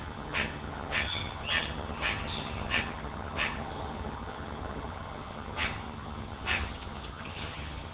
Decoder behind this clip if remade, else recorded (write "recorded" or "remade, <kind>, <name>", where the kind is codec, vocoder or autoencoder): remade, vocoder, HiFi-GAN